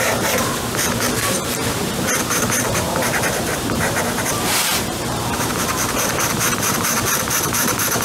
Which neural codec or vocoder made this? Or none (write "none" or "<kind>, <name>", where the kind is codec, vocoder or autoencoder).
vocoder, BigVGAN v2